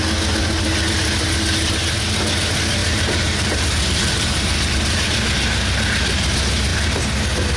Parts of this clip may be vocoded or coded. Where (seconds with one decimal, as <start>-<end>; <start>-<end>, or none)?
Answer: 0.4-2.0; 2.8-5.1